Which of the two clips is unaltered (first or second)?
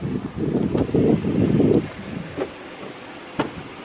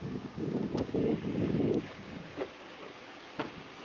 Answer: first